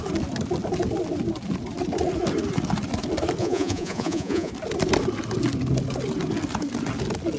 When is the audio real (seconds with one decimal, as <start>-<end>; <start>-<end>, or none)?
0.0-3.4; 4.5-7.4